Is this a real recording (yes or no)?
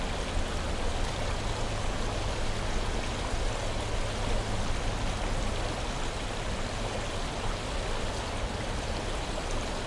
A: yes